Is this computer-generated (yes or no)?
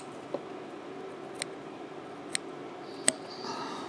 no